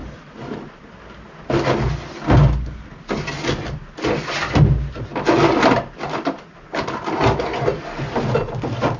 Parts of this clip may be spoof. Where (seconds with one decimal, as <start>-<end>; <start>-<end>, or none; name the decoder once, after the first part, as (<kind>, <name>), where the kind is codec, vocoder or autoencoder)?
none